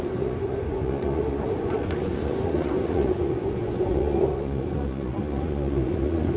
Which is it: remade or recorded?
remade